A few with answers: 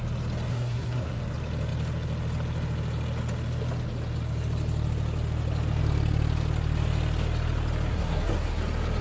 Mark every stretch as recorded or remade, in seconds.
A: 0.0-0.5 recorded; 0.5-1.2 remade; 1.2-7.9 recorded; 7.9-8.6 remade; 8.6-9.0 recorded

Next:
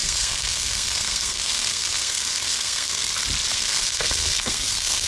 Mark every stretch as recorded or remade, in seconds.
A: 0.0-3.1 remade; 3.1-3.5 recorded; 3.5-5.1 remade

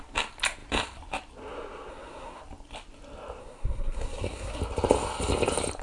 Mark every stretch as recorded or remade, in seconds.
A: 0.0-1.9 recorded; 1.9-2.4 remade; 2.4-3.4 recorded; 3.4-4.6 remade; 4.6-5.8 recorded

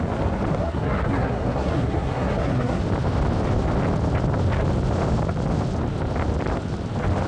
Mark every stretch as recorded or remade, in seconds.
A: 0.0-0.5 recorded; 0.5-2.8 remade; 2.8-7.3 recorded

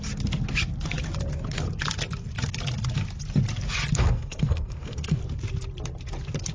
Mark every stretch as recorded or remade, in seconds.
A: 0.0-4.0 recorded; 4.0-5.2 remade; 5.2-6.5 recorded

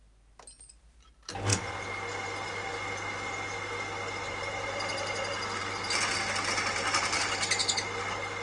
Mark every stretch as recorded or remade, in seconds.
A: 0.0-8.4 recorded